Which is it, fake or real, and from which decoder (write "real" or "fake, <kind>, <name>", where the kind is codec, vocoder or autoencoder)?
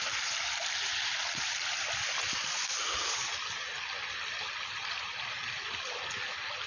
real